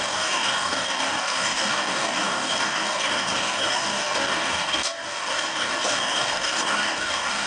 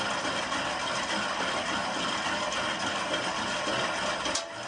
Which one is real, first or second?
second